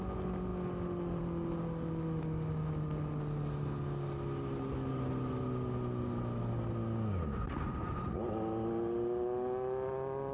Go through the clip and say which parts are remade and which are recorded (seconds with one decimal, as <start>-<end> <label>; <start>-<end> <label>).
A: 0.0-10.3 recorded